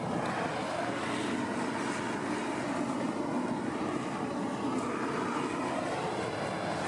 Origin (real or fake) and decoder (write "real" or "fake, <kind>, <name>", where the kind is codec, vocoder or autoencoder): real